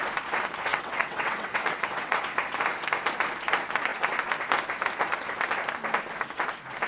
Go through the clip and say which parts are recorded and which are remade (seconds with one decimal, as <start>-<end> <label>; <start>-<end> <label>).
0.0-0.7 recorded; 0.7-2.2 remade; 2.2-6.9 recorded